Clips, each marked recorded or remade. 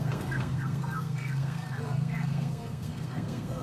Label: remade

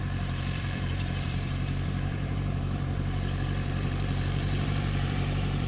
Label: remade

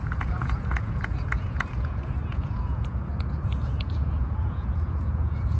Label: remade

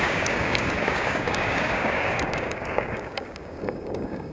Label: remade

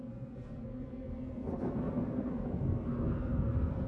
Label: remade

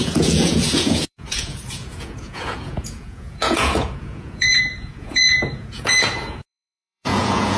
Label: remade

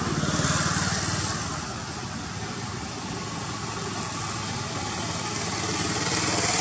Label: recorded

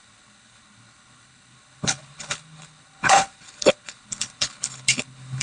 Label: remade